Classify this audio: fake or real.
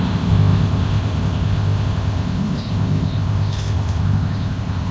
fake